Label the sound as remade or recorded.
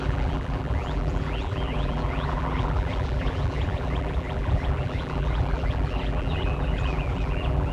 remade